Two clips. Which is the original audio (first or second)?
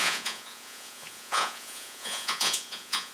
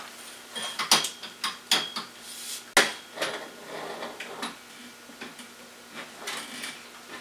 second